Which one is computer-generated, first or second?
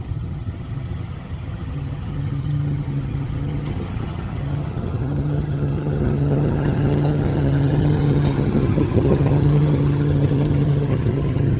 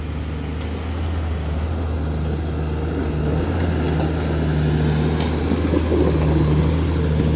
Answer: first